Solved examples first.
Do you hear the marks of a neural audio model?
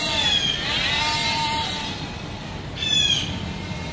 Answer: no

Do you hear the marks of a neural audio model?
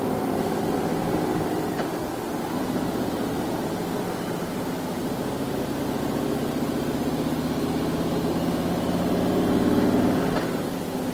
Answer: no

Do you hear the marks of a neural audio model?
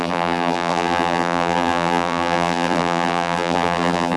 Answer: yes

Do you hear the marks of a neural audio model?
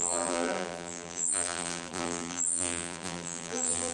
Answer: yes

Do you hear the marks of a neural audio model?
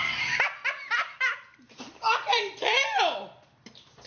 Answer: yes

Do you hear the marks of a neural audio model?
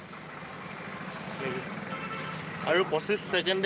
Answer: no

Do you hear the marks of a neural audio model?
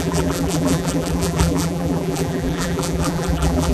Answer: yes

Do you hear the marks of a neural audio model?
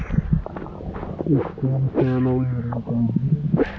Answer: no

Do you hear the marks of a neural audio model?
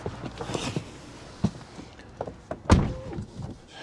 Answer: no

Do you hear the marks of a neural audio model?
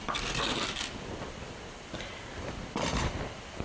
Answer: yes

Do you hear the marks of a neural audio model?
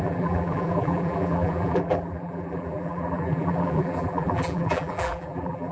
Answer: yes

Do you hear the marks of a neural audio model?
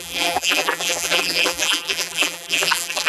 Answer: yes